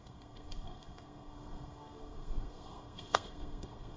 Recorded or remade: remade